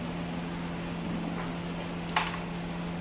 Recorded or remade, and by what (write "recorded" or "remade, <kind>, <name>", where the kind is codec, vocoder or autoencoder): recorded